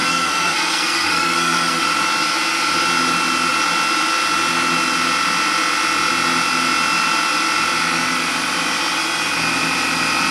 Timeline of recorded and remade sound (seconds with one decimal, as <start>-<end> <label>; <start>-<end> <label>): 0.0-1.8 remade; 1.8-10.3 recorded